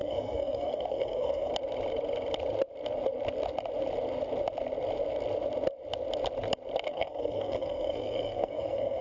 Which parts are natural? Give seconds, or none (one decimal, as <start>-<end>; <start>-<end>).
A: 1.5-6.9